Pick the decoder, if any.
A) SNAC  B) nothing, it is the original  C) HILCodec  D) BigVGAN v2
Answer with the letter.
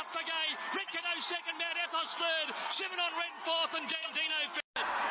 B